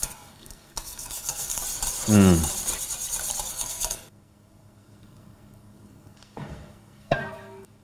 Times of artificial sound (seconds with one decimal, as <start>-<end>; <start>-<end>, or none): 0.0-1.6; 3.5-7.8